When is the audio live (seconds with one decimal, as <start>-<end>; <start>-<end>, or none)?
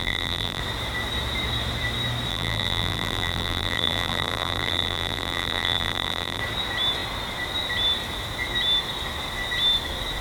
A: 0.6-2.3; 6.4-10.2